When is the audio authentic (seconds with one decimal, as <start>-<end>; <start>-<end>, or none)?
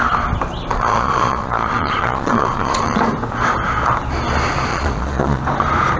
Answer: 0.0-0.7; 3.0-4.7; 5.4-6.0